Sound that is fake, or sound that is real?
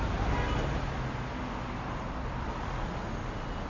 real